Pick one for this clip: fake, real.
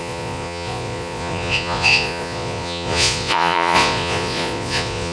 fake